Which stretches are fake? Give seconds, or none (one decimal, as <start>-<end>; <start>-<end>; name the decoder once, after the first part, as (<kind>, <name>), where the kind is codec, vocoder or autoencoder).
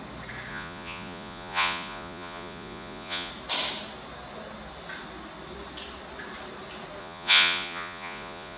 0.5-3.3 (vocoder, Vocos); 7.0-8.6